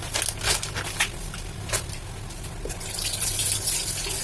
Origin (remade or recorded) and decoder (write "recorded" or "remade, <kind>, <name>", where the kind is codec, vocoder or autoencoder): recorded